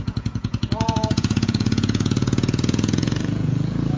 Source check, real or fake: fake